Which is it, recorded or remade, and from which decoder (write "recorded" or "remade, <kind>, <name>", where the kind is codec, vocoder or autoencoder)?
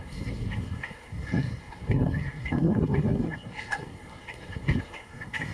remade, codec, SNAC